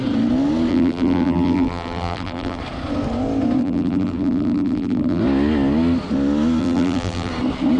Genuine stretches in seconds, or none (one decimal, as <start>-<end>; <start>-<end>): 0.0-0.7; 2.6-3.6; 5.2-6.6; 7.3-7.8